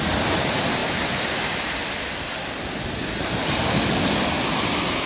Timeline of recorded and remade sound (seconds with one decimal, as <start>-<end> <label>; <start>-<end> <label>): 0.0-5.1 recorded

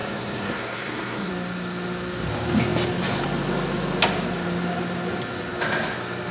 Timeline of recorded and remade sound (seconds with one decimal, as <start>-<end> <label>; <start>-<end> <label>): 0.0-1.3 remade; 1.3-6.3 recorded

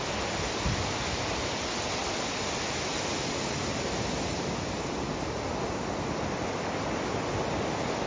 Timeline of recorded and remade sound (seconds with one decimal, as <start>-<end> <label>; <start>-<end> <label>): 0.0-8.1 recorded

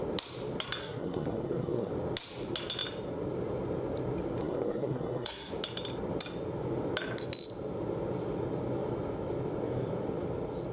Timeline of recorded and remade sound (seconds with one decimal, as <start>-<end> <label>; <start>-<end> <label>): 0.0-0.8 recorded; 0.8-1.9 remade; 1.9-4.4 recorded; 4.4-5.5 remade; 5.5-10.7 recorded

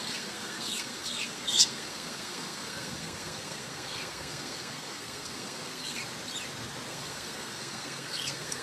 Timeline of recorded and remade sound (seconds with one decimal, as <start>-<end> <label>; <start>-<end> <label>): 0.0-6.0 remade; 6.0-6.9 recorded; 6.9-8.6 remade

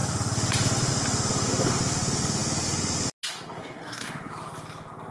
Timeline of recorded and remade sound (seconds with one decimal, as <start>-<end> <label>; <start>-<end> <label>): 0.0-3.6 recorded; 3.6-4.3 remade; 4.3-5.1 recorded